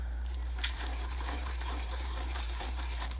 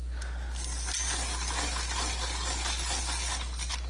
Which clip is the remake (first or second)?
first